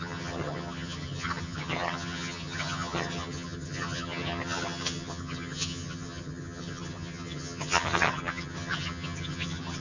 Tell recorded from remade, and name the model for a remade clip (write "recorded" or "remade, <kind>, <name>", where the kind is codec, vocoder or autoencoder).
remade, vocoder, HiFi-GAN